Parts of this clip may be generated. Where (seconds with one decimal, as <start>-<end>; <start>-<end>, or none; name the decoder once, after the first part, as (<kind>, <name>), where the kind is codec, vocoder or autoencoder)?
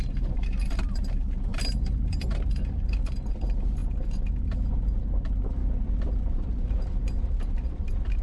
0.0-3.8 (vocoder, BigVGAN v2); 4.7-5.6; 6.2-8.2